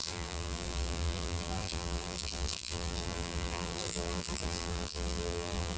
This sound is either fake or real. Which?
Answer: fake